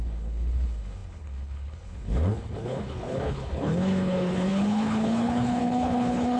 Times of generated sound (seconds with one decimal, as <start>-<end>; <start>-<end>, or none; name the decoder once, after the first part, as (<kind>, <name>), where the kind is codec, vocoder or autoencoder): 0.0-6.4 (codec, HILCodec)

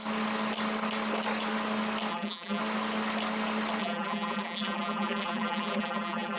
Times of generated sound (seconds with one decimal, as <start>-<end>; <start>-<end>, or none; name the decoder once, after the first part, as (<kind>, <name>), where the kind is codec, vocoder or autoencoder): 2.1-2.6 (vocoder, BigVGAN v2); 3.8-6.4

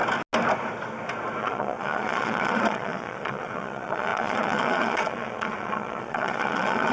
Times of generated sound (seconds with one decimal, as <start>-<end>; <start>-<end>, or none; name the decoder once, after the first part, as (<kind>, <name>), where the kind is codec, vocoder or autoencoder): 1.4-6.9 (vocoder, Vocos)

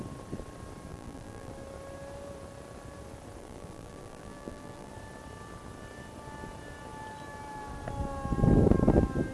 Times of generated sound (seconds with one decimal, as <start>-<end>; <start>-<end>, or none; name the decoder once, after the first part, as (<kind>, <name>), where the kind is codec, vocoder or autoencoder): 0.9-1.5 (vocoder, BigVGAN v2); 3.4-4.9

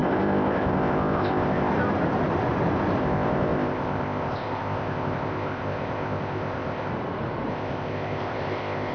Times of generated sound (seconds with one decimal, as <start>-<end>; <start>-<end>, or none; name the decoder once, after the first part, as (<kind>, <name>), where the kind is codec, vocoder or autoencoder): 0.0-1.7 (codec, ZipCodec); 3.0-6.9; 7.5-8.9

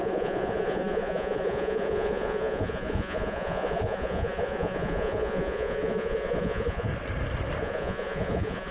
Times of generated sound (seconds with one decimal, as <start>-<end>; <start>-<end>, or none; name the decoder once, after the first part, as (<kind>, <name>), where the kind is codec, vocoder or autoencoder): 0.0-6.9 (vocoder, Vocos); 7.6-8.7

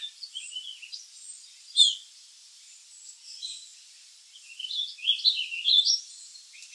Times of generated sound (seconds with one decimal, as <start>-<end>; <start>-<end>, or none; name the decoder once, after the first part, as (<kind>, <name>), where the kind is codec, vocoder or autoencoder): none